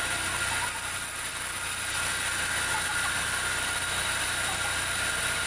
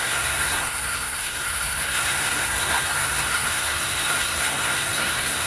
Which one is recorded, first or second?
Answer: first